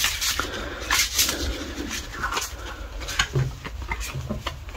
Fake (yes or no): no